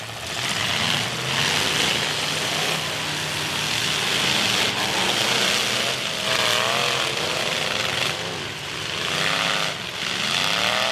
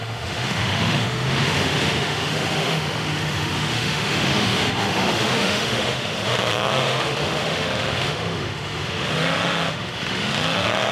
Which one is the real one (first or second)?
first